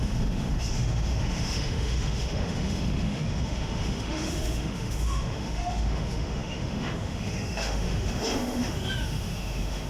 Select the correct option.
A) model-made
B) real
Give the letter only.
A